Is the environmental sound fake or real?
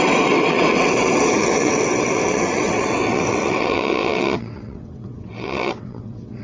fake